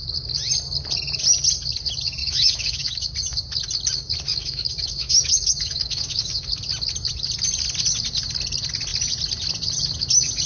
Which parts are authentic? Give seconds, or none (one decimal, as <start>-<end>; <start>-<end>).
0.0-2.2; 3.1-4.3; 6.5-10.5

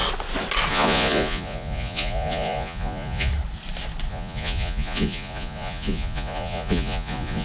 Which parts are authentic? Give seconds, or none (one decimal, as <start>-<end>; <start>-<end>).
0.0-0.7; 3.3-4.1

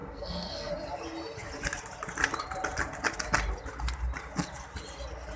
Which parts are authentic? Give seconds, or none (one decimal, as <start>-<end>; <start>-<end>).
0.7-5.4

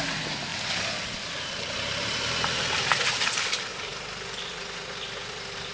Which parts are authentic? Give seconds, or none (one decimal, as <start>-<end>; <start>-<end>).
0.0-0.5; 3.3-5.7

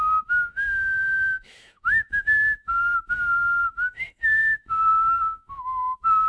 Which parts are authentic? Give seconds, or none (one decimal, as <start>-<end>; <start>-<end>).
none